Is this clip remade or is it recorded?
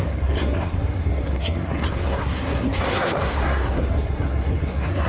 remade